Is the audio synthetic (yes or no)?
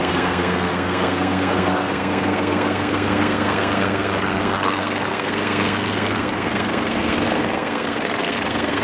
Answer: yes